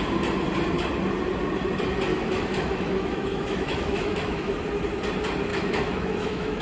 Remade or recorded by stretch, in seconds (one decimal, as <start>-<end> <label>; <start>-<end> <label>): 0.0-2.1 recorded; 2.1-4.5 remade; 4.5-5.5 recorded; 5.5-6.6 remade

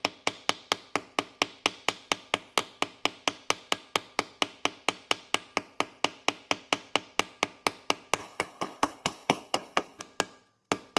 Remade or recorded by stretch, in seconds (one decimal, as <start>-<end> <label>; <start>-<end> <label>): 0.0-8.2 recorded; 8.2-10.0 remade; 10.0-11.0 recorded

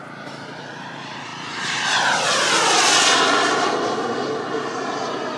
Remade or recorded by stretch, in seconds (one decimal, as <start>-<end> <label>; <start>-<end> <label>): 0.0-1.3 recorded; 1.3-4.3 remade; 4.3-5.4 recorded

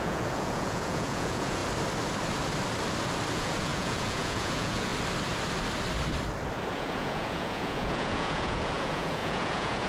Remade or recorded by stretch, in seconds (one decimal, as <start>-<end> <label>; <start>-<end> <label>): 0.0-1.6 remade; 1.6-3.3 recorded; 3.3-4.9 remade; 4.9-6.7 recorded; 6.7-9.9 remade

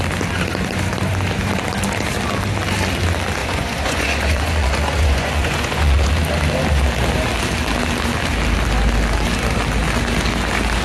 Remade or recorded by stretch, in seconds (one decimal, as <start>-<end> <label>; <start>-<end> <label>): 0.0-3.4 recorded; 3.4-6.1 remade; 6.1-10.8 recorded

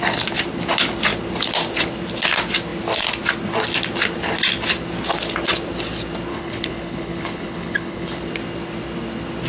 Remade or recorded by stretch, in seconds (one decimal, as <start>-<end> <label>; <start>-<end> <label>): 0.0-6.3 recorded; 6.3-8.2 remade; 8.2-9.5 recorded